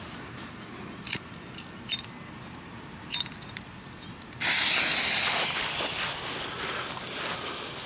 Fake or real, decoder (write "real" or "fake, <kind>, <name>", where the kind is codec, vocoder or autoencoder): real